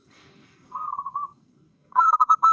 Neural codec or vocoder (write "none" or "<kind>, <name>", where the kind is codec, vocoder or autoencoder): codec, SNAC